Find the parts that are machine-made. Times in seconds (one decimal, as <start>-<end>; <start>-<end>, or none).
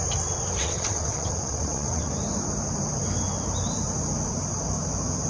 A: 0.6-2.1